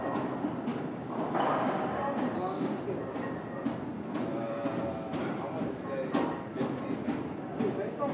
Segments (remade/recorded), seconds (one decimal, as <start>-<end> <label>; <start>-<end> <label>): 0.0-0.7 recorded; 0.7-2.8 remade; 2.8-4.3 recorded; 4.3-4.8 remade; 4.8-7.5 recorded; 7.5-8.1 remade